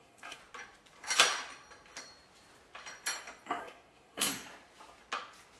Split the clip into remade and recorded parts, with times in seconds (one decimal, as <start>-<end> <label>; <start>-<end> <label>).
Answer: 0.0-0.4 remade; 0.4-3.6 recorded; 3.6-4.3 remade; 4.3-5.6 recorded